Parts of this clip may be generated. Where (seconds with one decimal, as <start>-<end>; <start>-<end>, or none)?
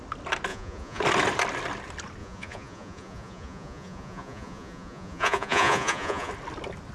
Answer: 0.5-1.0; 2.2-6.3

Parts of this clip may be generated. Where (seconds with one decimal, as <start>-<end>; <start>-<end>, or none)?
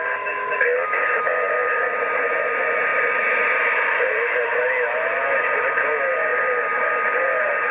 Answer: 6.3-7.7